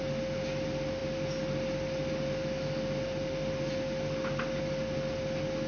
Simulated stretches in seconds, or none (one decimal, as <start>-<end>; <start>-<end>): none